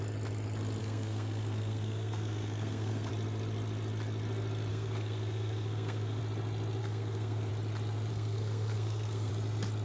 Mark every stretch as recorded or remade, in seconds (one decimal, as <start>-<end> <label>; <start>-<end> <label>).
0.0-0.8 recorded; 0.8-3.1 remade; 3.1-4.7 recorded; 4.7-6.2 remade; 6.2-6.8 recorded; 6.8-7.5 remade; 7.5-8.1 recorded; 8.1-9.3 remade; 9.3-9.8 recorded